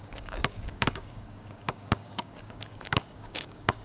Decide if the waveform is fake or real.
fake